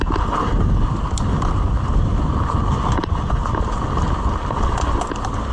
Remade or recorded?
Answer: recorded